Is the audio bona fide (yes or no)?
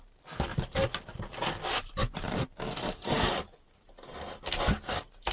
yes